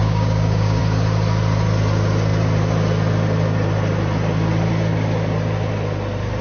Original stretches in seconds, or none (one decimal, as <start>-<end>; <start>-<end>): 0.8-6.4